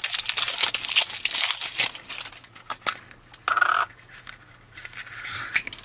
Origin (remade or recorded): recorded